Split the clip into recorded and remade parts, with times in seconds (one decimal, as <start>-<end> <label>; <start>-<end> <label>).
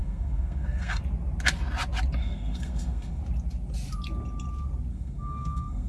0.0-1.0 remade; 1.0-2.2 recorded; 2.2-3.2 remade; 3.2-4.9 recorded; 4.9-5.9 remade